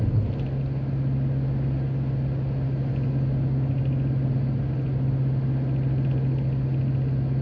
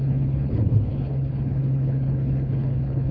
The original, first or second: first